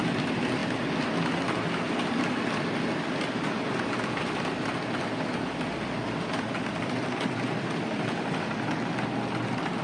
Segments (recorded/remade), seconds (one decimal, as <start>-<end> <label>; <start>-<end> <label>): 0.0-9.8 recorded